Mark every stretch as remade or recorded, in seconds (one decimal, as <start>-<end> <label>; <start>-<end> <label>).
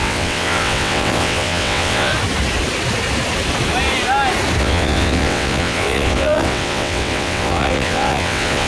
0.0-2.1 remade; 2.1-4.6 recorded; 4.6-8.7 remade